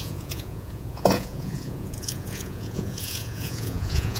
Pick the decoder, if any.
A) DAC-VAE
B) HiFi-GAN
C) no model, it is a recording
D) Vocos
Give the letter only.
D